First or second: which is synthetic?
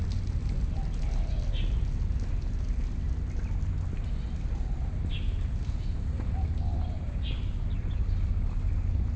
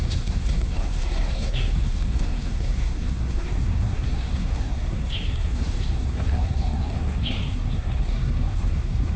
second